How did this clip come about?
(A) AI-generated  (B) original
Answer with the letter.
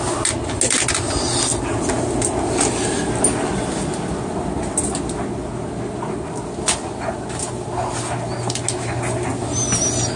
B